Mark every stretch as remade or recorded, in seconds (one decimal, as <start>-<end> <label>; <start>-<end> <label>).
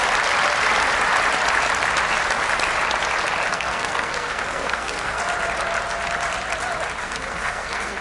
0.0-3.5 recorded; 3.5-5.2 remade; 5.2-7.0 recorded; 7.0-8.0 remade